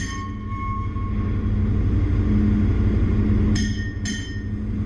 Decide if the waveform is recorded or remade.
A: recorded